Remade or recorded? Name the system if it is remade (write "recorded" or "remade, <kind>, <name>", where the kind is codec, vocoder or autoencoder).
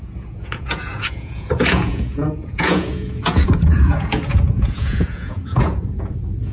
remade, vocoder, Vocos